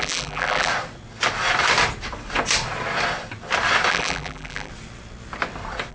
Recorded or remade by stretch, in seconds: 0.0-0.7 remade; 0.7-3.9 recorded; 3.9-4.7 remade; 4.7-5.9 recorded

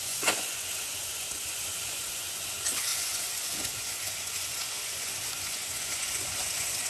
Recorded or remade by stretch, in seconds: 0.0-6.9 remade

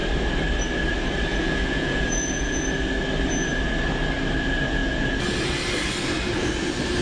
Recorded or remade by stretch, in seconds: 0.0-1.3 recorded; 1.3-2.6 remade; 2.6-7.0 recorded

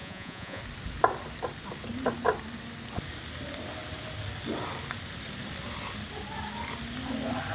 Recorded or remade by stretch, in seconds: 0.0-0.6 remade; 0.6-7.5 recorded

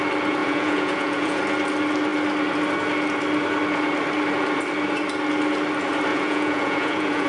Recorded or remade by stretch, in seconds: 0.0-0.4 recorded; 0.4-1.4 remade; 1.4-6.1 recorded; 6.1-7.3 remade

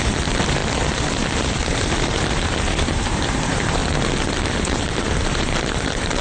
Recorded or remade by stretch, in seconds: 0.0-0.6 remade; 0.6-1.7 recorded; 1.7-3.8 remade; 3.8-4.5 recorded; 4.5-6.2 remade

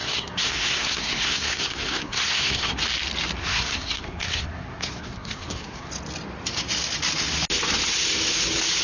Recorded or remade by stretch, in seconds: 0.0-2.8 remade; 2.8-3.4 recorded; 3.4-5.9 remade; 5.9-8.8 recorded

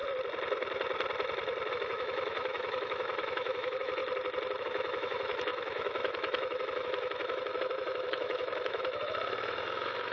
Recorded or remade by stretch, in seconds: 0.0-1.7 recorded; 1.7-4.0 remade; 4.0-4.6 recorded; 4.6-10.1 remade